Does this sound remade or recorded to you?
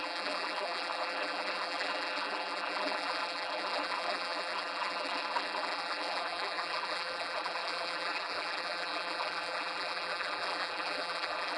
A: remade